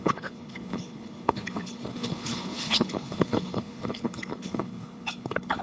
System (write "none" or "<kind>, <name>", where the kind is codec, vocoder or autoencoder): codec, HILCodec